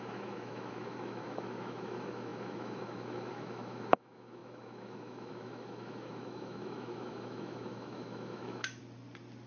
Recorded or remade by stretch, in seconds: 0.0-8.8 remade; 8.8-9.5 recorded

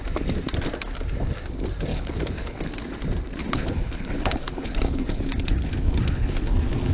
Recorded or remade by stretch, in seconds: 0.0-1.9 recorded; 1.9-2.6 remade; 2.6-3.4 recorded; 3.4-6.5 remade; 6.5-6.9 recorded